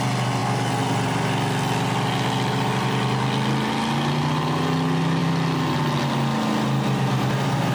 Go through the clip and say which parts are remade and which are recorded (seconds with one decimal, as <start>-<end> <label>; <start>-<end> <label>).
0.0-7.7 recorded